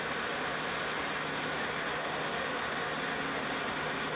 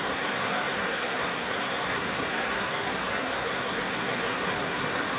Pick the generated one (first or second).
second